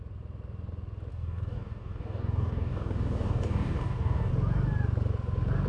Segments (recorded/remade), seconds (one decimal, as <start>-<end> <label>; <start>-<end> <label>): 0.0-1.1 recorded; 1.1-4.3 remade; 4.3-5.7 recorded